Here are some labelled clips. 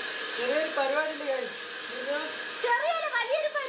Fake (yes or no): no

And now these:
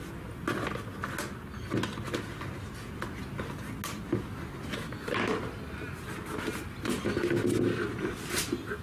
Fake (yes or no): no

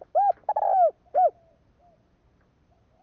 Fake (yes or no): no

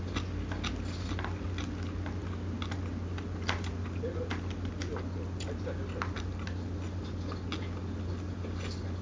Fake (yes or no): no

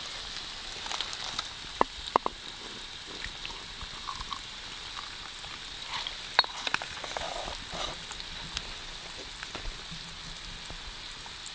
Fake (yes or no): no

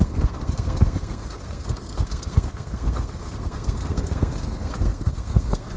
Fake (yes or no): yes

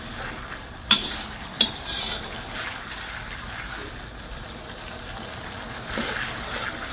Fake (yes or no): no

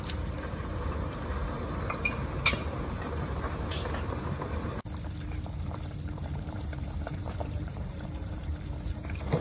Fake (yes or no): yes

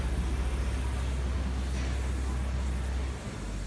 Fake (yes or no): no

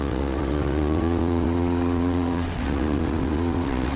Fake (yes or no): yes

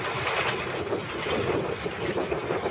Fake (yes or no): no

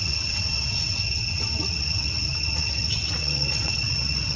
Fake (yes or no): yes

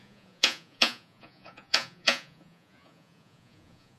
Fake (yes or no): yes